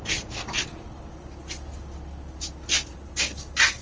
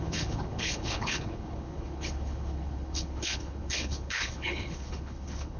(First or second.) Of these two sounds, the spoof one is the second